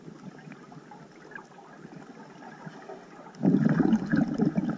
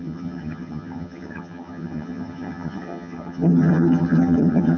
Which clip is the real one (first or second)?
first